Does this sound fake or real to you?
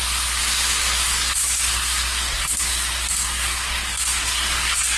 fake